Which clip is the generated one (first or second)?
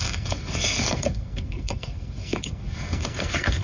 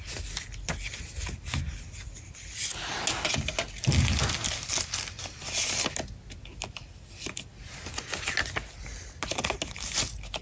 first